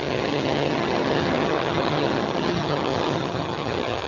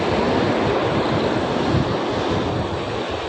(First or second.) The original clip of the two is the second